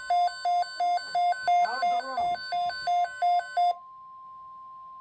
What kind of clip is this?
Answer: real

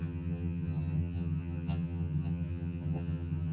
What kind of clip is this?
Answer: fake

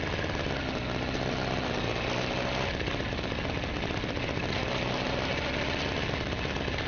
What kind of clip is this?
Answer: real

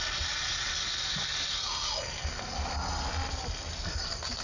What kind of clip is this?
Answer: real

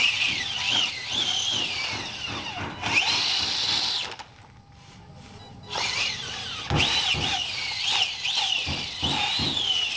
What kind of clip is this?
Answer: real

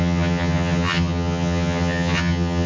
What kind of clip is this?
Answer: fake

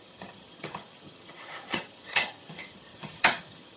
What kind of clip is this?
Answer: fake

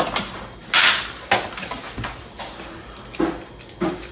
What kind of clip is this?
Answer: real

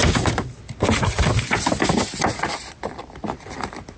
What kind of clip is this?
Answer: real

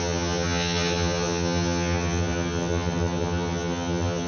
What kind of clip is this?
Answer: fake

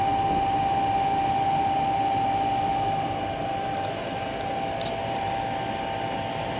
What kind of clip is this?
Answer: real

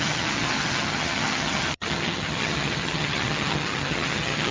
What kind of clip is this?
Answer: fake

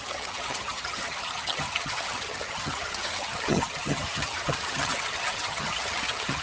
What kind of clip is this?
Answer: fake